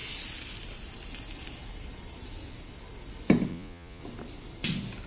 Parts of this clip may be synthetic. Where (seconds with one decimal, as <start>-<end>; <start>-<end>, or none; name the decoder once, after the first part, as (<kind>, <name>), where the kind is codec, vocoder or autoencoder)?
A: 3.5-4.0 (vocoder, Vocos)